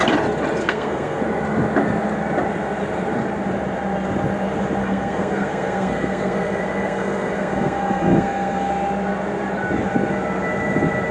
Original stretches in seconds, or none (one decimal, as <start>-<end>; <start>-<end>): 0.0-0.6; 1.2-4.8; 8.7-11.1